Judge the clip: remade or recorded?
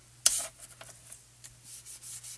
recorded